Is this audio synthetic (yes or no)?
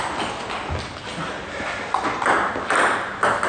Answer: no